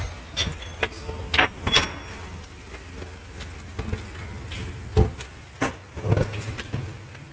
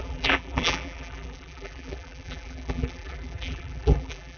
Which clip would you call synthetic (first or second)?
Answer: second